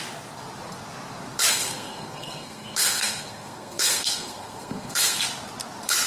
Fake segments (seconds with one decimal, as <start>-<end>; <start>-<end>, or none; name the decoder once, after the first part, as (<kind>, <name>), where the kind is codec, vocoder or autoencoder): 1.5-5.2 (codec, SNAC)